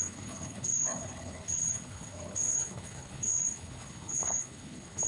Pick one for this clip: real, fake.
fake